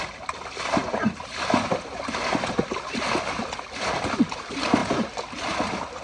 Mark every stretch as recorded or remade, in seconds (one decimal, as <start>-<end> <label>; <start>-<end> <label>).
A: 0.0-6.0 recorded